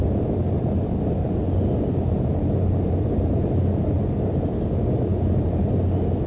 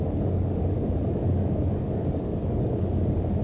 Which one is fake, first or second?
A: second